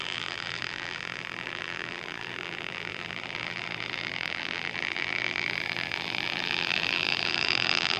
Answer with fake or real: fake